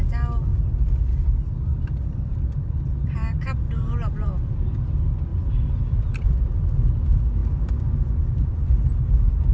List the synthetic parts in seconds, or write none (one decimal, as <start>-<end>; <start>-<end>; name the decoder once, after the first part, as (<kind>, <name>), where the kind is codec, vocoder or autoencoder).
0.5-1.0 (vocoder, BigVGAN v2); 1.7-4.3; 5.3-6.9; 7.4-9.1